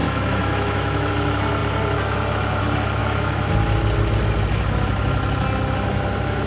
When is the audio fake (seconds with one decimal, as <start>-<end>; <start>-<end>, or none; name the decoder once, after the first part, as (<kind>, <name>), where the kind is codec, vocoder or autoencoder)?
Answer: 0.0-1.1 (autoencoder, DAC-VAE); 3.0-3.5

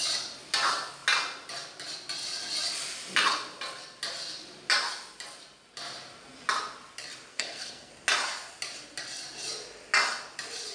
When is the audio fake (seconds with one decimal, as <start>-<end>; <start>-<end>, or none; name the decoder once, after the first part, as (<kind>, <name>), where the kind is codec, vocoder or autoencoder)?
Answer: 7.3-7.9 (codec, SNAC)

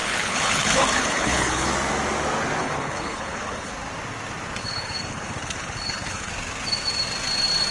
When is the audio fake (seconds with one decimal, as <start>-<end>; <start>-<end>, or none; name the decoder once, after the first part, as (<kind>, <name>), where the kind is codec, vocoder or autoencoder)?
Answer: 0.0-1.7 (codec, HILCodec); 2.6-3.7; 4.6-6.3

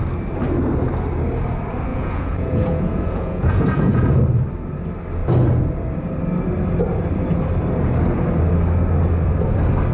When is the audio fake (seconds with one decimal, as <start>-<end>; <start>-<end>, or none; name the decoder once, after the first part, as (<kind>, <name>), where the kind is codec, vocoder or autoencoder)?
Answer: 1.9-4.2 (vocoder, Vocos)

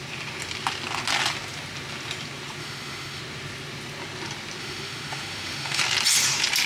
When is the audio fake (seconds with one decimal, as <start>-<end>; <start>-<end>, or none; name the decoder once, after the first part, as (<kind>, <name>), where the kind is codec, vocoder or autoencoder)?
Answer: 2.6-3.2 (autoencoder, DAC-VAE); 4.6-5.8